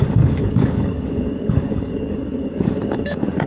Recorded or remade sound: remade